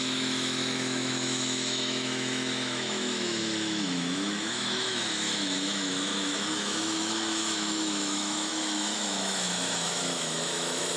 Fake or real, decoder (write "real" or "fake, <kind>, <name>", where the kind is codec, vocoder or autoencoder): fake, autoencoder, DAC-VAE